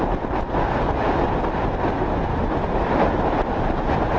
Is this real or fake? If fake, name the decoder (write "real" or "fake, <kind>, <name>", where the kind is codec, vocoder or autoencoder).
real